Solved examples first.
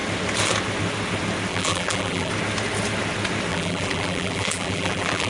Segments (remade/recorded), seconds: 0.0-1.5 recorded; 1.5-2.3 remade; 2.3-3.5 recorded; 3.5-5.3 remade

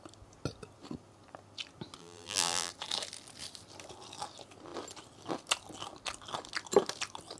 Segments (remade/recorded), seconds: 0.0-2.0 recorded; 2.0-2.7 remade; 2.7-7.4 recorded